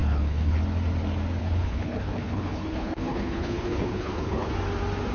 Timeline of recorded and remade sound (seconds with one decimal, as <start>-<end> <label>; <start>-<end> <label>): 0.0-0.6 remade; 0.6-1.4 recorded; 1.4-4.5 remade; 4.5-5.1 recorded